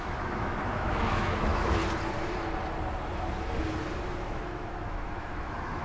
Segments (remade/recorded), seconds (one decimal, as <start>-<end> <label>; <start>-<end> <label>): 0.0-1.8 remade; 1.8-4.0 recorded; 4.0-5.8 remade

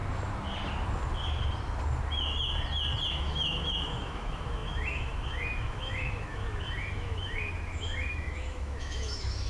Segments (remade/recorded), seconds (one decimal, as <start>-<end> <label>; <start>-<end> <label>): 0.0-3.1 recorded; 3.1-9.5 remade

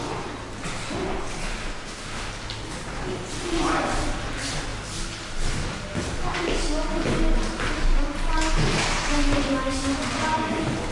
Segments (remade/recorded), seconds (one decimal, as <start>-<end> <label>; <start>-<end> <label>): 0.0-1.6 recorded; 1.6-2.3 remade; 2.3-10.9 recorded

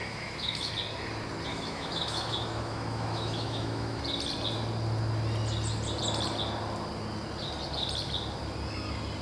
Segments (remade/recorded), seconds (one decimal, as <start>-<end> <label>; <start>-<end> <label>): 0.0-0.7 remade; 0.7-1.5 recorded; 1.5-4.0 remade; 4.0-9.2 recorded

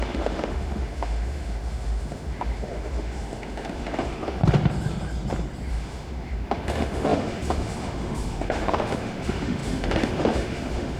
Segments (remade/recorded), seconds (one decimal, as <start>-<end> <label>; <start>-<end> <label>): 0.0-4.4 remade; 4.4-5.7 recorded; 5.7-11.0 remade

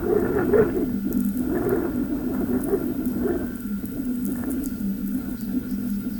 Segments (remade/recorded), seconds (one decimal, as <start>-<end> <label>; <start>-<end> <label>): 0.0-6.2 recorded